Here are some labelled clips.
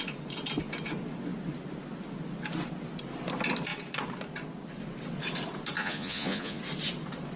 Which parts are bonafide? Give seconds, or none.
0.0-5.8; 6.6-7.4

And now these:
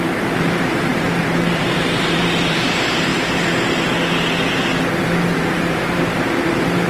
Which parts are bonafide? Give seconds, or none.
3.1-5.0